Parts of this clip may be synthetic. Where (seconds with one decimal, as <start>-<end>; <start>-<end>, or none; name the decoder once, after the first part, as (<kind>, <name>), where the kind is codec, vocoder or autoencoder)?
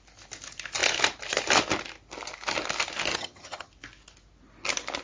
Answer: 3.1-3.7 (vocoder, HiFi-GAN)